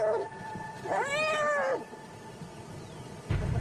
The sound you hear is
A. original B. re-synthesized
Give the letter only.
A